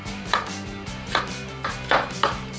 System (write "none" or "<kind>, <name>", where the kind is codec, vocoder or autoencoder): vocoder, BigVGAN v2